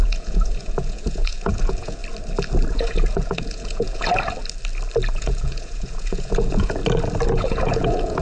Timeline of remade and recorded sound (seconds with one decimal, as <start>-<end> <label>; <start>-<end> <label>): 0.0-2.0 remade; 2.0-2.7 recorded; 2.7-4.1 remade; 4.1-5.1 recorded; 5.1-6.8 remade; 6.8-7.3 recorded; 7.3-8.2 remade